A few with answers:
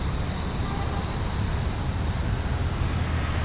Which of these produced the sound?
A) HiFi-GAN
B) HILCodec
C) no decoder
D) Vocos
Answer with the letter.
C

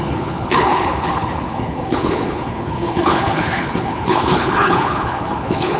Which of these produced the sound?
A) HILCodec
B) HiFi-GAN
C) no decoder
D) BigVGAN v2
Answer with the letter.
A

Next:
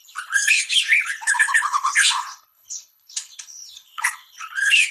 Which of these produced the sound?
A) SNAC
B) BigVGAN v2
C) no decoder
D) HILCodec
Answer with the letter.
D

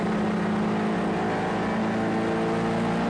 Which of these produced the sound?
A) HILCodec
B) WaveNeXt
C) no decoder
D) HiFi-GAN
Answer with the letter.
C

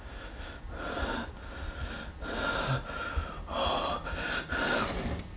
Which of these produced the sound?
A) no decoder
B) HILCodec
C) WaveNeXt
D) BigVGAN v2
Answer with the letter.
A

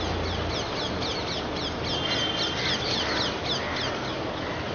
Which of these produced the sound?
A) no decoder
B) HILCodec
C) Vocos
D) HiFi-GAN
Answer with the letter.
A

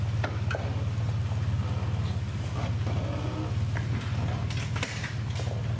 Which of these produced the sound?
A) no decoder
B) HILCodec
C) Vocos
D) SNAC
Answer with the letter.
A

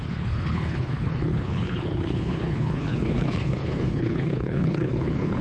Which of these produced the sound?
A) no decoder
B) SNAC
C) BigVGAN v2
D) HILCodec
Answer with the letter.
D